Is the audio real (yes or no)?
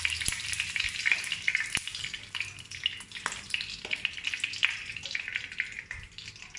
yes